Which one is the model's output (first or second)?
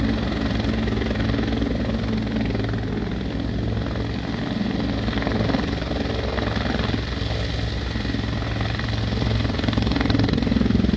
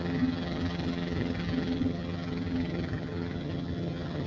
second